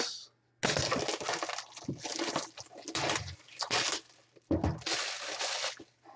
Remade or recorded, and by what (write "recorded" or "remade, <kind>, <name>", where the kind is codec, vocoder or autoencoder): recorded